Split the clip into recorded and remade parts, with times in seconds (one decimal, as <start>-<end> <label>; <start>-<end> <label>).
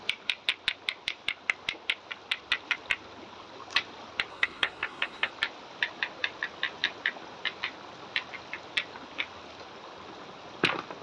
0.0-4.3 recorded; 4.3-5.3 remade; 5.3-11.0 recorded